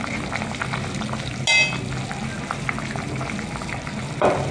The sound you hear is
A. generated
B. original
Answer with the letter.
B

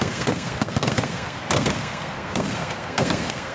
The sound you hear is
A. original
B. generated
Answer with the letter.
B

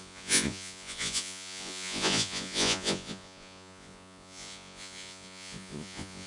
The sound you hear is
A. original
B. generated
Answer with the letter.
B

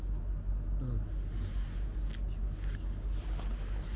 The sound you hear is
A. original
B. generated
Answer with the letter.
A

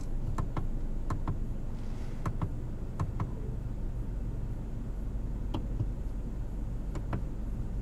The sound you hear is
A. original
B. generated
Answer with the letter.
A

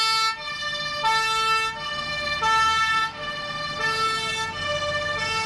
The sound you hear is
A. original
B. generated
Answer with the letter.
A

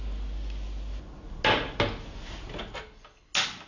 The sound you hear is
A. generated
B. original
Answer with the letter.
B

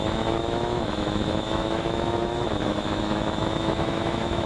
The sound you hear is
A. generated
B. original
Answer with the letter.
A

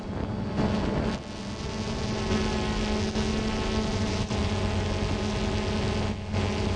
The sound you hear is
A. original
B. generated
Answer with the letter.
A